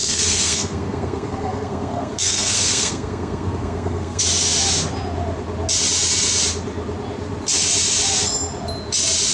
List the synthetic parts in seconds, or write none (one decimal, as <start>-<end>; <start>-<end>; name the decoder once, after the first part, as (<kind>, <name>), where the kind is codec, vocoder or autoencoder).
0.0-4.2 (codec, SNAC)